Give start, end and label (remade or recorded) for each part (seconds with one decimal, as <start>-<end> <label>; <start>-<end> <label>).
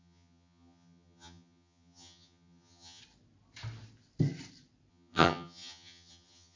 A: 0.0-3.0 remade; 3.0-4.9 recorded; 4.9-6.6 remade